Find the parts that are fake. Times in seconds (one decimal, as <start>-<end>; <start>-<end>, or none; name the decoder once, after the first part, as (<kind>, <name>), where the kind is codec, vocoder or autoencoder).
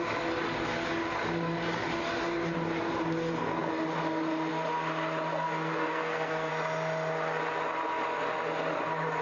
5.3-6.5 (codec, SNAC)